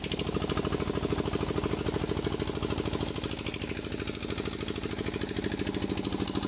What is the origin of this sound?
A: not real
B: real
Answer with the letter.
B